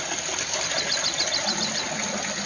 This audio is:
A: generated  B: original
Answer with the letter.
B